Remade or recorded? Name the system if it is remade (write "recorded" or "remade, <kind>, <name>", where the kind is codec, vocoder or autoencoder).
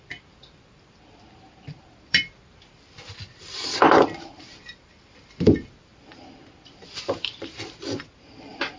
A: remade, vocoder, BigVGAN v2